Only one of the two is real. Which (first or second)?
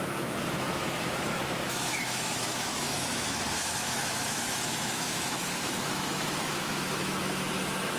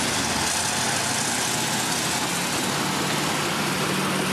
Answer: second